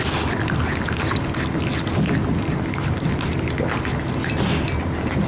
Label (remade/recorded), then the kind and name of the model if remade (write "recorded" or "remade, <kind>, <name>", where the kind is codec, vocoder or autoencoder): recorded